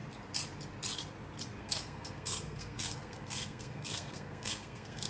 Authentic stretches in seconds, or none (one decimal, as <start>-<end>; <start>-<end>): 0.0-1.6